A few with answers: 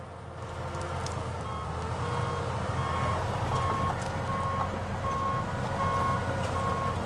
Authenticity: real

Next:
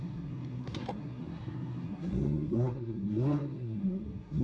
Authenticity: fake